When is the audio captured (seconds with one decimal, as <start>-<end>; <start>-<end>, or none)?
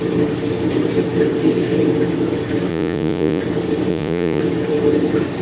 0.0-2.7; 3.4-3.9; 4.4-5.4